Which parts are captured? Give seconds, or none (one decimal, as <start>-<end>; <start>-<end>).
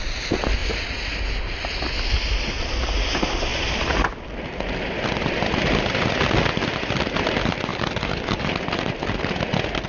0.0-7.7; 8.5-9.9